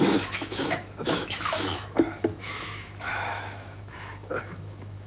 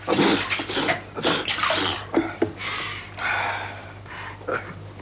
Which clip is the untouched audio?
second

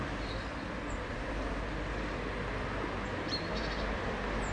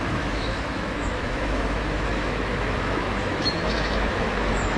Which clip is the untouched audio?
first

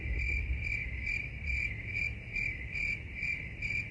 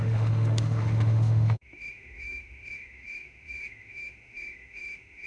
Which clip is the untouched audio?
first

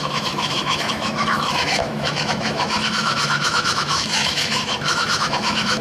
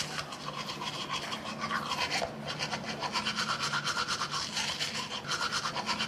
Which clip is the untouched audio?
second